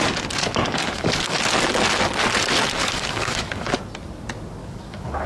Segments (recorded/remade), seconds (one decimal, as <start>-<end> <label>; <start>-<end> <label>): 0.0-0.4 recorded; 0.4-1.4 remade; 1.4-2.8 recorded; 2.8-3.7 remade; 3.7-4.6 recorded; 4.6-5.3 remade

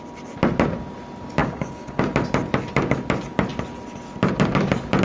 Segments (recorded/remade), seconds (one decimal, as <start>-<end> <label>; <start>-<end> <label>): 0.0-1.4 recorded; 1.4-2.0 remade; 2.0-5.0 recorded

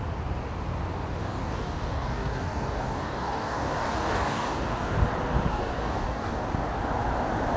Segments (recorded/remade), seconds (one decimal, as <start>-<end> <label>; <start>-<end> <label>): 0.0-1.2 recorded; 1.2-4.9 remade; 4.9-5.5 recorded; 5.5-6.5 remade; 6.5-7.6 recorded

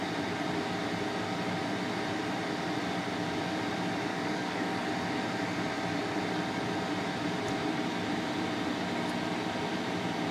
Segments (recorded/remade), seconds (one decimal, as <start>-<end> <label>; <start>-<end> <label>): 0.0-4.1 recorded; 4.1-4.9 remade; 4.9-10.3 recorded

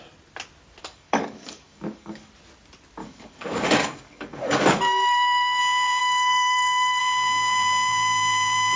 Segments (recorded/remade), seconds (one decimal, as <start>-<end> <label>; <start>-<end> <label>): 0.0-0.8 recorded; 0.8-2.3 remade; 2.3-3.0 recorded; 3.0-5.6 remade; 5.6-6.0 recorded; 6.0-7.0 remade; 7.0-8.8 recorded

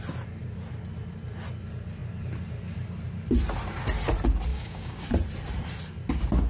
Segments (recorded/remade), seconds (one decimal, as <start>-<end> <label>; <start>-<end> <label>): 0.0-4.5 recorded; 4.5-5.1 remade; 5.1-6.5 recorded